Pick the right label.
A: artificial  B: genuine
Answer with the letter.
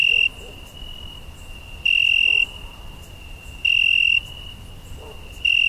B